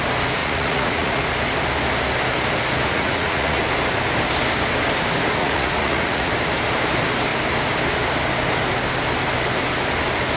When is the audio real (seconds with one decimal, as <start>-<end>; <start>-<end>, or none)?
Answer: 0.0-0.4; 1.2-2.9; 3.6-5.4; 6.3-10.4